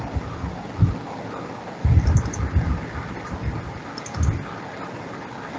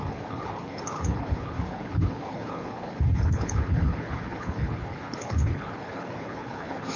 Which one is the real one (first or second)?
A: first